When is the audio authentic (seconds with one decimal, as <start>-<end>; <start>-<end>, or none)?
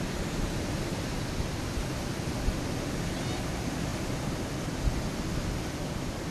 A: 0.0-6.3